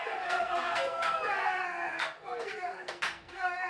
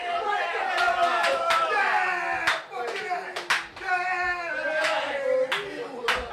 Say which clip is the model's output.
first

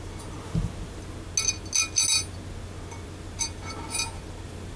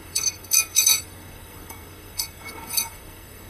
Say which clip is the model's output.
second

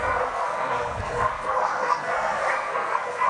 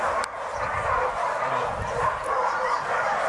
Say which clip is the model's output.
first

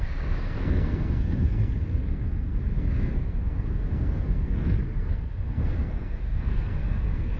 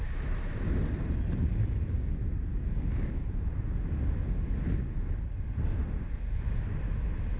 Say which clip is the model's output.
first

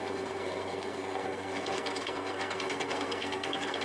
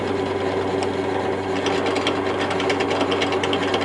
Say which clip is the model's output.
first